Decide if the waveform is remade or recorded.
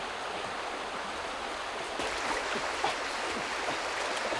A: recorded